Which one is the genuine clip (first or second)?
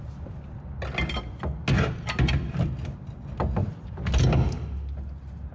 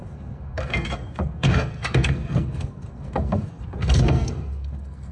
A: first